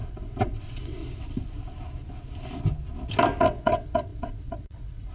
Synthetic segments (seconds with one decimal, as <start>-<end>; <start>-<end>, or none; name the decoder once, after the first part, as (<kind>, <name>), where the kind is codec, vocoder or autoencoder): 0.0-1.0 (vocoder, WaveNeXt); 3.4-5.1